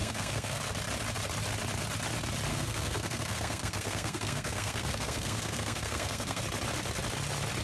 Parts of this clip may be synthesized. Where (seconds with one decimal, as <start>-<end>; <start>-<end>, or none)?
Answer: 0.0-0.6; 2.5-6.4